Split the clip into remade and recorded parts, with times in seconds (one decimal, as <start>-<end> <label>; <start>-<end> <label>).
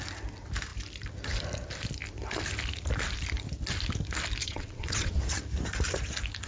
0.0-4.4 recorded; 4.4-5.2 remade; 5.2-6.5 recorded